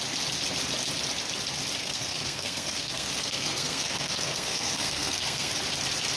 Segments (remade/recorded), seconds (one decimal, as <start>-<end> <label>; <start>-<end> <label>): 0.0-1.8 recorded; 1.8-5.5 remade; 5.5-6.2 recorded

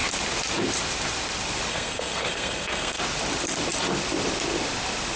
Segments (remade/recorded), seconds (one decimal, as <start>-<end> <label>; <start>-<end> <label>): 0.0-1.7 recorded; 1.7-3.0 remade; 3.0-5.2 recorded

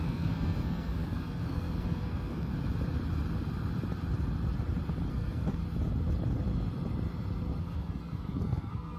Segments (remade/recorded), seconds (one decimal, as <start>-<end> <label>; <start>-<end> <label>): 0.0-2.5 remade; 2.5-5.1 recorded; 5.1-5.6 remade; 5.6-7.6 recorded; 7.6-9.0 remade

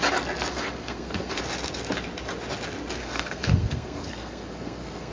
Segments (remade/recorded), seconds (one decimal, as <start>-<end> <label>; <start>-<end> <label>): 0.0-0.5 recorded; 0.5-1.4 remade; 1.4-3.0 recorded; 3.0-5.1 remade